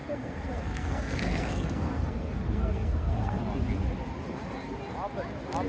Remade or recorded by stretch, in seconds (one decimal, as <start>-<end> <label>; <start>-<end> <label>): 0.0-3.4 remade; 3.4-5.7 recorded

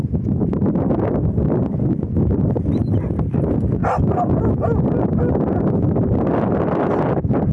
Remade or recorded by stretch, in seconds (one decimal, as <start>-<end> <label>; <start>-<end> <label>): 0.0-0.4 recorded; 0.4-1.4 remade; 1.4-7.5 recorded

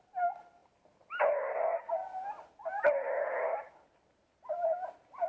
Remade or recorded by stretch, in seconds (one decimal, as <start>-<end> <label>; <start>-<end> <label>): 0.0-5.3 recorded

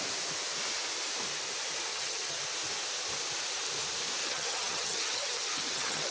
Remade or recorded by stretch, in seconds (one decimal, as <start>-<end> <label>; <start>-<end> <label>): 0.0-1.9 recorded; 1.9-2.4 remade; 2.4-4.2 recorded; 4.2-6.1 remade

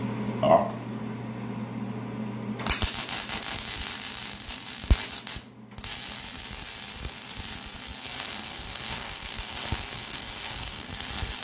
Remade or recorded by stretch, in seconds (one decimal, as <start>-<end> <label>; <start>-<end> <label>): 0.0-8.0 recorded; 8.0-10.9 remade; 10.9-11.4 recorded

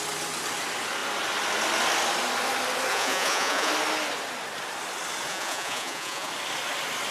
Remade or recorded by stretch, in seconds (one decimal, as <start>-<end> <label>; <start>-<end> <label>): 0.0-2.9 recorded; 2.9-3.7 remade; 3.7-5.3 recorded; 5.3-6.3 remade; 6.3-7.1 recorded